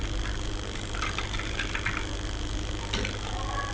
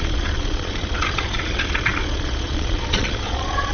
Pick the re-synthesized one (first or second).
second